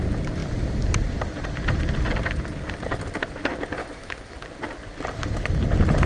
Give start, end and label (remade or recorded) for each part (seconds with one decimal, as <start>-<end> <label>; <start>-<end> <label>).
0.0-3.8 recorded; 3.8-4.4 remade; 4.4-6.1 recorded